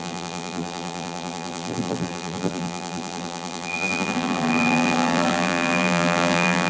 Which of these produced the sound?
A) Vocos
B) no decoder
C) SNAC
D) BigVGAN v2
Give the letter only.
D